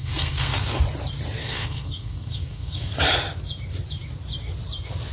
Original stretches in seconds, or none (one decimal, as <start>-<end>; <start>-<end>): 0.8-1.4; 2.9-5.1